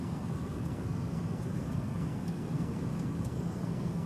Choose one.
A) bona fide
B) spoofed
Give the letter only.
B